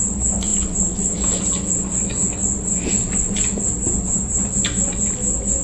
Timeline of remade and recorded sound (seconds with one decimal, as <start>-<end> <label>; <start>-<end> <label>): 0.0-5.6 recorded